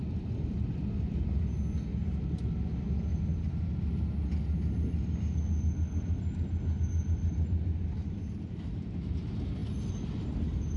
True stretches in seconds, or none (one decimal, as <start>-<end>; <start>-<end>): 1.1-9.6